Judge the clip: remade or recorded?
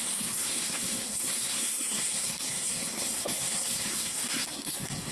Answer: remade